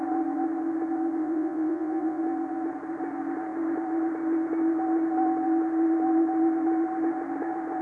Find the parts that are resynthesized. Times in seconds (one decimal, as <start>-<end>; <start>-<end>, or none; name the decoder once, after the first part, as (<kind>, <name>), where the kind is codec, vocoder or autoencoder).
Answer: 1.2-2.2 (vocoder, WaveNeXt)